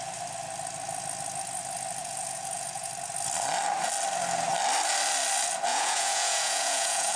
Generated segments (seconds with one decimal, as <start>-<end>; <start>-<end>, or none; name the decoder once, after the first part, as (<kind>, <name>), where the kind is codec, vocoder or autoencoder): 2.0-2.9 (vocoder, Vocos); 5.7-7.2